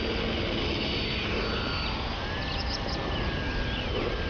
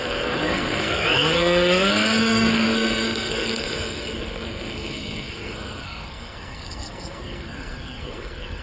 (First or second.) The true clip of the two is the first